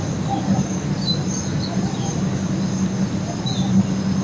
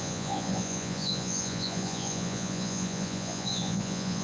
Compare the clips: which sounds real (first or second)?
first